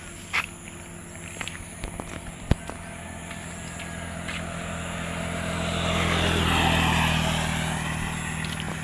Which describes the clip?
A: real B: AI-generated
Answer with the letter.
A